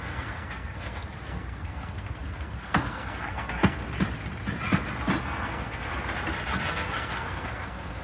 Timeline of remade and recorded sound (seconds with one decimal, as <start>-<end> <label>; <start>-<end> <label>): 0.0-3.8 remade; 3.8-5.2 recorded; 5.2-5.9 remade; 5.9-6.7 recorded; 6.7-8.0 remade